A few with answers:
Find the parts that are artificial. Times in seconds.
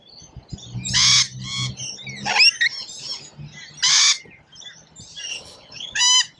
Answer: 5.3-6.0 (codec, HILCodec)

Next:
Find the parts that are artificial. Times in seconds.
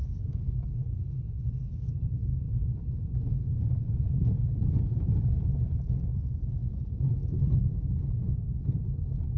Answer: 0.0-1.9 (codec, HILCodec)